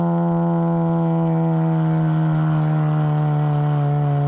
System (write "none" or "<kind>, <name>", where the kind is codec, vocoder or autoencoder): none